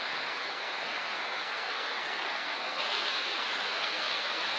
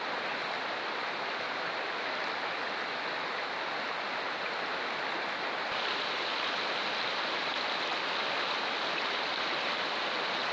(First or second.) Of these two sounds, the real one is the second